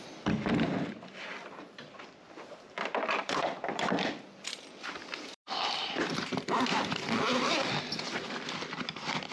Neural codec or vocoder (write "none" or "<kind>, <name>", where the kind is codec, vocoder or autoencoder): vocoder, BigVGAN v2